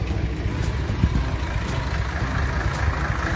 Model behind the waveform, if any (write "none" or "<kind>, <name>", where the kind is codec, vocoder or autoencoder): none